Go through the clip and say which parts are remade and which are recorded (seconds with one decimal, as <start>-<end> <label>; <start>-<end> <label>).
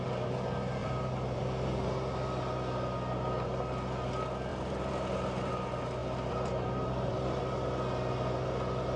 0.0-0.8 recorded; 0.8-1.4 remade; 1.4-4.5 recorded; 4.5-5.5 remade; 5.5-6.0 recorded; 6.0-7.4 remade; 7.4-9.0 recorded